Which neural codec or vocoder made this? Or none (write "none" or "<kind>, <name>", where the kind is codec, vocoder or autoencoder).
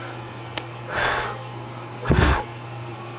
codec, SNAC